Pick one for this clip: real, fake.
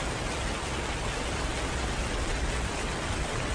real